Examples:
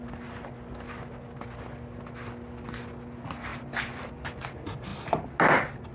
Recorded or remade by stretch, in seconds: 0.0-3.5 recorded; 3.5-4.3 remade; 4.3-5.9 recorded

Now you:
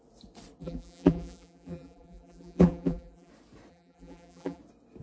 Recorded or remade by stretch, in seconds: 0.0-0.6 recorded; 0.6-3.3 remade; 3.3-3.7 recorded; 3.7-4.6 remade; 4.6-5.0 recorded

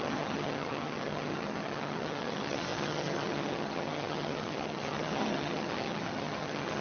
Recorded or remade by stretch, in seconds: 0.0-6.8 remade

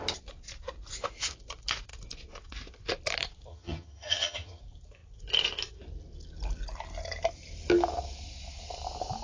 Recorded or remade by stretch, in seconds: 0.0-3.5 recorded; 3.5-4.6 remade; 4.6-9.2 recorded

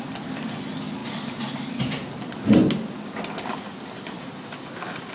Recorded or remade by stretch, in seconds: 0.0-5.1 recorded

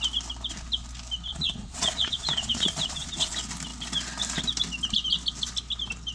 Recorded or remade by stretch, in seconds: 0.0-1.3 recorded; 1.3-3.3 remade; 3.3-6.1 recorded